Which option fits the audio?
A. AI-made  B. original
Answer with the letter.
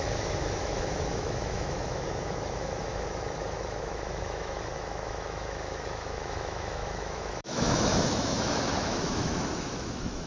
A